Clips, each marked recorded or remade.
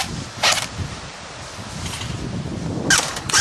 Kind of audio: recorded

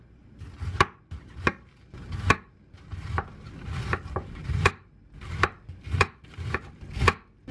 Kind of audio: recorded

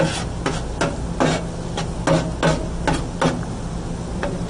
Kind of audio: recorded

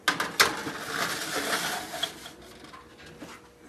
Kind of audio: recorded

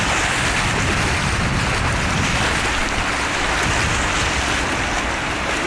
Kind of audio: recorded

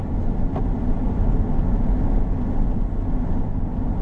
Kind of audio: recorded